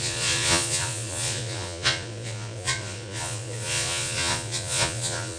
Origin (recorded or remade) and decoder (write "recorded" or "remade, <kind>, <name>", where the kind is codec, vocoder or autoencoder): remade, vocoder, Vocos